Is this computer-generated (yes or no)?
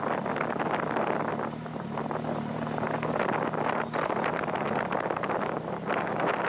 no